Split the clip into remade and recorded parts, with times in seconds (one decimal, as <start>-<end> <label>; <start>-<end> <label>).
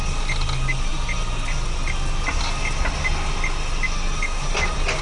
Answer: 0.0-5.0 recorded